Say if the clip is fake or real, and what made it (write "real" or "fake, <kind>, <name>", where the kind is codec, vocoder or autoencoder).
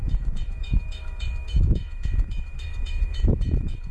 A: fake, autoencoder, DAC-VAE